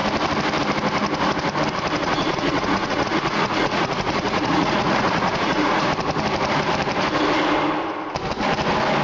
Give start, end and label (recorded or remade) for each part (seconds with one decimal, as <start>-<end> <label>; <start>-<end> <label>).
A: 0.0-2.0 recorded; 2.0-5.9 remade; 5.9-9.0 recorded